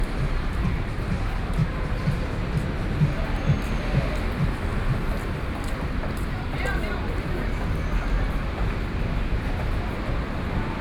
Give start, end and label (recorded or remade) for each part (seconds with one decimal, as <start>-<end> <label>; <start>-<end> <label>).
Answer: 0.0-1.6 remade; 1.6-4.3 recorded; 4.3-4.7 remade; 4.7-5.3 recorded; 5.3-10.8 remade